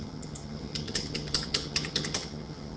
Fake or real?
fake